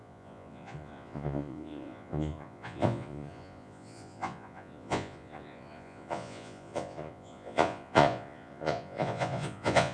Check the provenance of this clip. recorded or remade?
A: remade